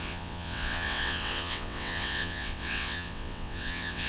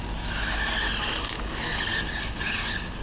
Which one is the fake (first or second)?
first